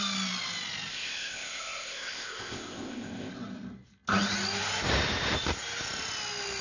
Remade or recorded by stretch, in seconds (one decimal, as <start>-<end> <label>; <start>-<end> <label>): 0.0-0.9 recorded; 0.9-3.3 remade; 3.3-6.6 recorded